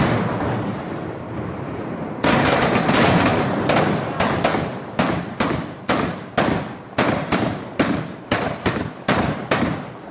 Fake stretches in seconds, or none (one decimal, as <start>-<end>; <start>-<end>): 0.0-3.3; 6.8-10.1